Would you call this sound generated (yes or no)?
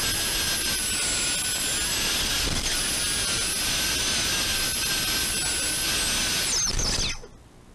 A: no